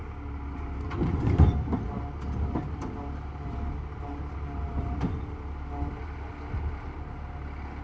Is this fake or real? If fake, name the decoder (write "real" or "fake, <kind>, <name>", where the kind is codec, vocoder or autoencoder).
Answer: real